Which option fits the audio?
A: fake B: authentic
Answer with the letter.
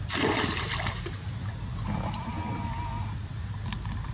B